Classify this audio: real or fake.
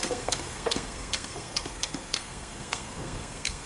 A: fake